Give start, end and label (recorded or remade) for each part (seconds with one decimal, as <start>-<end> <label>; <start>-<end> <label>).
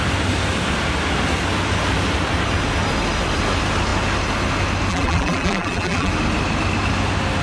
0.0-4.9 recorded; 4.9-6.1 remade; 6.1-7.4 recorded